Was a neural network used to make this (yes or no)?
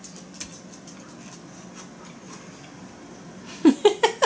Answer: no